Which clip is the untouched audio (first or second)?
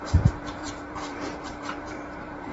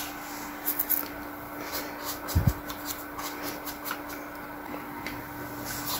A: second